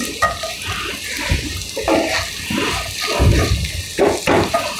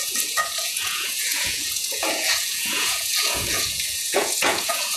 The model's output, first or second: second